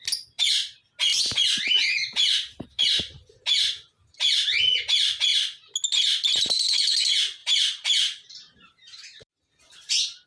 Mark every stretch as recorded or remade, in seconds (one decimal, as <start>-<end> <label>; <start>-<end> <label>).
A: 0.0-1.1 recorded; 1.1-2.8 remade; 2.8-7.4 recorded; 7.4-9.3 remade; 9.3-10.3 recorded